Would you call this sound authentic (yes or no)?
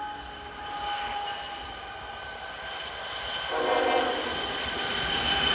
yes